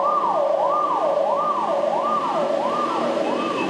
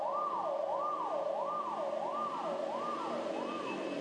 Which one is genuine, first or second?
second